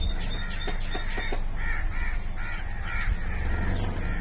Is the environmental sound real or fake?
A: real